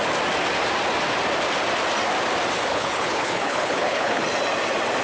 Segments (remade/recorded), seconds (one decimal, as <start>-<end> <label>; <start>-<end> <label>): 0.0-2.7 recorded; 2.7-4.2 remade; 4.2-5.0 recorded